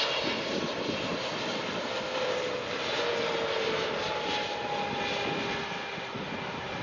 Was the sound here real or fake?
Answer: real